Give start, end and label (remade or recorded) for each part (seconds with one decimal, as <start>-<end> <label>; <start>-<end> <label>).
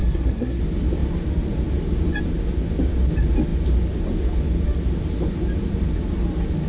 0.0-0.6 remade; 0.6-6.7 recorded